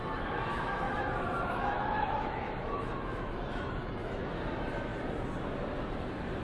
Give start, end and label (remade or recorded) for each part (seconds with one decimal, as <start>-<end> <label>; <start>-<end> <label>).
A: 0.0-0.5 recorded; 0.5-4.3 remade; 4.3-6.4 recorded